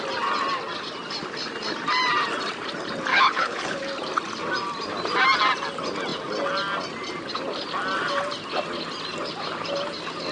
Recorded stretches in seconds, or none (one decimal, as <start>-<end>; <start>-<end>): 0.0-3.1; 3.8-10.3